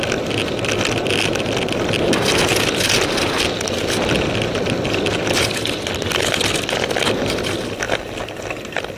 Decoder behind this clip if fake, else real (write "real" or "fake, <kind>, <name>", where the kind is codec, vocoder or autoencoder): real